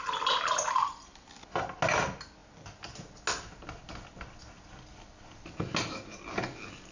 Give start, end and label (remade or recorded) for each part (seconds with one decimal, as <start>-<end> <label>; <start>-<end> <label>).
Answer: 0.0-6.9 recorded